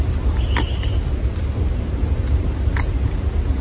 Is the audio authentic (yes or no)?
yes